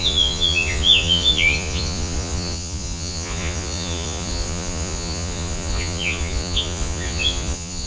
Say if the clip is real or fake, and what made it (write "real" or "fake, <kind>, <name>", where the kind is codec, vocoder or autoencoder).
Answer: fake, vocoder, Vocos